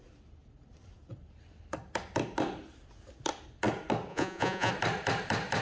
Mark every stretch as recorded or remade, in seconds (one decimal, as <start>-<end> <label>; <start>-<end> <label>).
0.0-4.1 recorded; 4.1-4.7 remade; 4.7-5.6 recorded